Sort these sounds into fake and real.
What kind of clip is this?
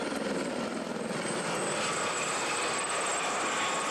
real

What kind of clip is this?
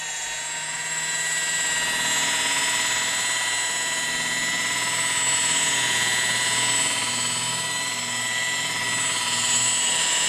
real